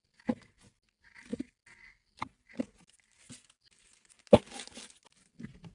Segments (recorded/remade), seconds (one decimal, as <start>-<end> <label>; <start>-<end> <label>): 0.0-5.7 recorded